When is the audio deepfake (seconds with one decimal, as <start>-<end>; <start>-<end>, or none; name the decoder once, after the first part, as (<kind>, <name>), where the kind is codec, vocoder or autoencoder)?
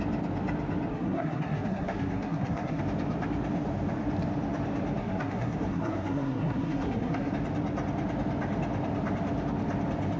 0.9-2.8 (codec, SNAC); 5.0-7.3